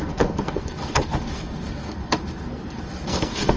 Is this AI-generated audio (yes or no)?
yes